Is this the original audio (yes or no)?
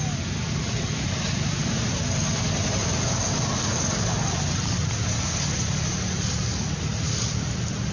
yes